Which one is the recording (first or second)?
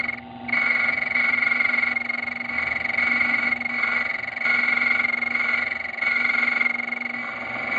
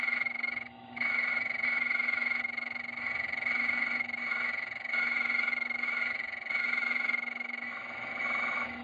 first